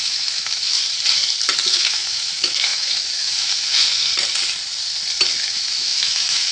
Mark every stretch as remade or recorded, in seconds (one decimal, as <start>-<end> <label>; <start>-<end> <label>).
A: 0.0-0.8 remade; 0.8-1.7 recorded; 1.7-4.1 remade; 4.1-5.4 recorded; 5.4-6.5 remade